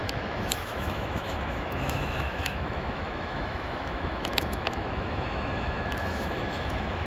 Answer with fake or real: fake